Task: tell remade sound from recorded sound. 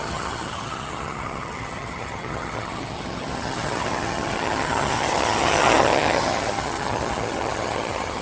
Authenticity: remade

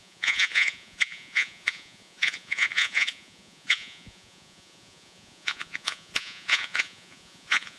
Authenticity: remade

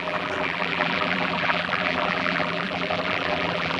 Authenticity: remade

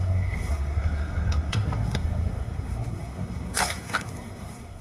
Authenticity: remade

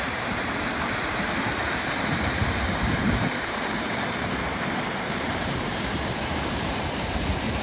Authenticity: remade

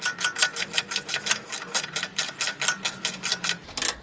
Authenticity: recorded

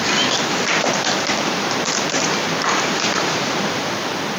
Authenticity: remade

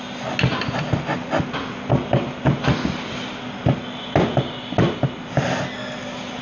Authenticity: recorded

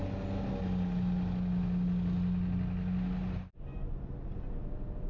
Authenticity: recorded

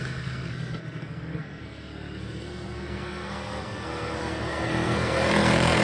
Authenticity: remade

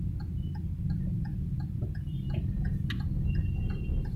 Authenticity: recorded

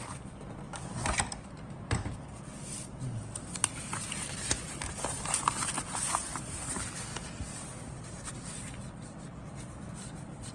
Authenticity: recorded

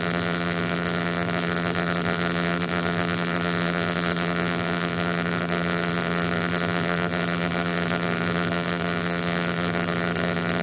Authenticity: remade